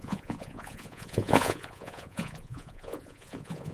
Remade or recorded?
remade